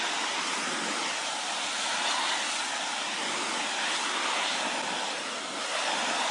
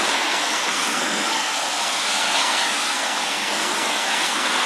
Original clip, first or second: first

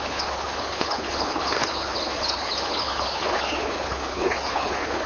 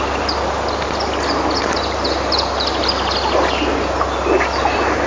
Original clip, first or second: second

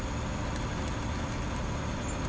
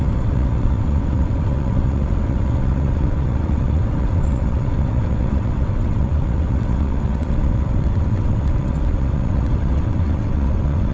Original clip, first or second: first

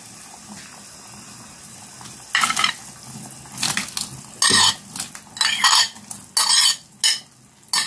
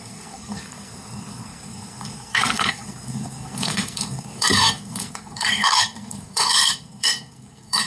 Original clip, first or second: first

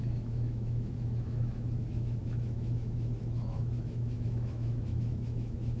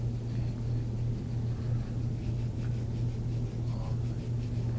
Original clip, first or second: second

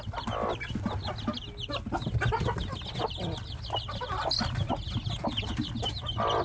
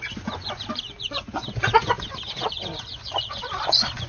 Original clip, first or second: first